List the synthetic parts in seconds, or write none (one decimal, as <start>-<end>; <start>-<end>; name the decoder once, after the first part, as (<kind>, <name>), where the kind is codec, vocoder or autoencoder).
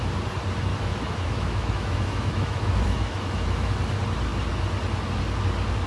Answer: 0.7-3.8 (autoencoder, DAC-VAE)